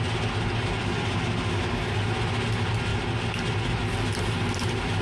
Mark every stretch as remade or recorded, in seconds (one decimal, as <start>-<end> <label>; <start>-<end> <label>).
0.0-5.0 recorded